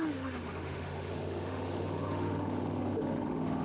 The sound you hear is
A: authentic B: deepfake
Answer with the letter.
B